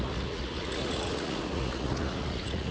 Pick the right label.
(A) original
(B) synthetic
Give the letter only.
B